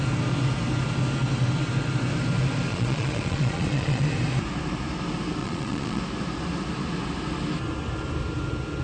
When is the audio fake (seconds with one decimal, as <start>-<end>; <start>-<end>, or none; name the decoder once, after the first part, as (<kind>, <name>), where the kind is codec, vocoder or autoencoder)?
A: 2.7-4.1 (vocoder, Vocos); 5.4-6.0